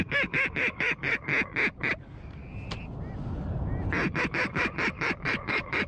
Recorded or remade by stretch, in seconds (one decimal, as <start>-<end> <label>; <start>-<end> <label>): 0.0-1.3 remade; 1.3-2.0 recorded; 2.0-2.4 remade; 2.4-4.2 recorded; 4.2-5.9 remade